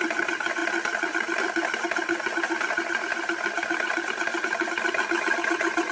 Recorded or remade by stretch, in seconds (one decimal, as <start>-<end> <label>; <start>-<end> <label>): 0.0-5.9 recorded

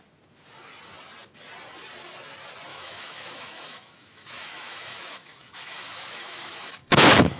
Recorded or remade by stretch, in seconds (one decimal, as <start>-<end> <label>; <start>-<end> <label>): 0.0-2.7 recorded; 2.7-7.4 remade

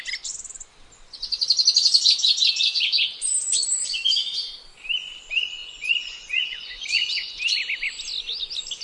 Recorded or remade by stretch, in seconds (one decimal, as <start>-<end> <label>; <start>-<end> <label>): 0.0-5.6 recorded; 5.6-7.4 remade; 7.4-8.8 recorded